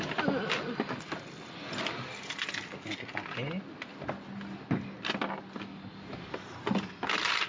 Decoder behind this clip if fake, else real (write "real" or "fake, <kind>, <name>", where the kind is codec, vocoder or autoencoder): real